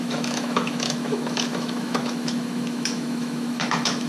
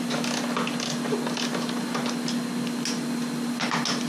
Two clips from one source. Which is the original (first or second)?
second